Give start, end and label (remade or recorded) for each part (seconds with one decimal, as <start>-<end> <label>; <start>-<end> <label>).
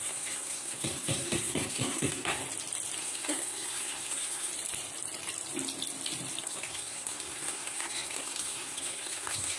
0.0-2.4 remade; 2.4-3.0 recorded; 3.0-4.5 remade; 4.5-6.4 recorded; 6.4-9.6 remade